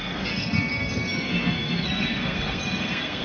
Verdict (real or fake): fake